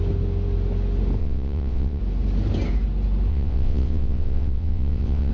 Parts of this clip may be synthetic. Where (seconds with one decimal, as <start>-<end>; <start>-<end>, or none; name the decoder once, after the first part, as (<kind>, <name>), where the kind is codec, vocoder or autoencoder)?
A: 1.2-2.0 (vocoder, WaveNeXt); 3.3-5.3